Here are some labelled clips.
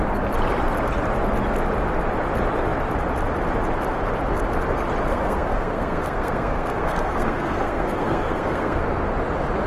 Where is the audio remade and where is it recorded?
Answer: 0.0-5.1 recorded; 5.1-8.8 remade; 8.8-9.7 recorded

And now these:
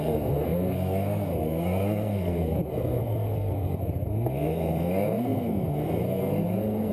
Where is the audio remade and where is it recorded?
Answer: 0.0-6.9 remade